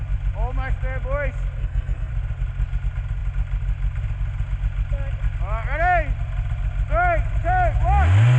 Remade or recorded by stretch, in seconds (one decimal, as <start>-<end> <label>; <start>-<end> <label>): 0.0-1.6 recorded; 1.6-2.1 remade; 2.1-8.4 recorded